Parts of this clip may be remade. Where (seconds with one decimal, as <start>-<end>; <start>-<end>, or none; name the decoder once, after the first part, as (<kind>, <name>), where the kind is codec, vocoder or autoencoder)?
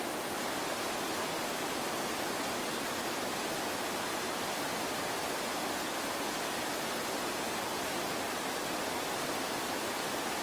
none